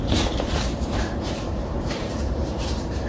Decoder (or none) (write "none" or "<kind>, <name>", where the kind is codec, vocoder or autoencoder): vocoder, BigVGAN v2